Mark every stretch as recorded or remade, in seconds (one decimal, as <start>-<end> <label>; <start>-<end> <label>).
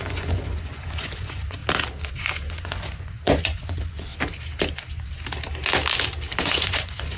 0.0-1.6 remade; 1.6-2.1 recorded; 2.1-4.1 remade; 4.1-6.4 recorded; 6.4-7.2 remade